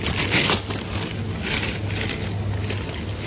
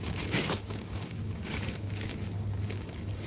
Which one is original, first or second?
first